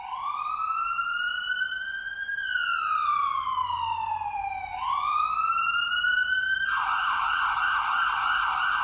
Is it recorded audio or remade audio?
recorded